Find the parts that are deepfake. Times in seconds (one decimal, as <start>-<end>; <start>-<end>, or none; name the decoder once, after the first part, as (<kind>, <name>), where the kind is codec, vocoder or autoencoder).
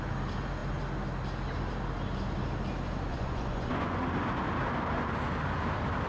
3.1-4.0 (vocoder, Vocos)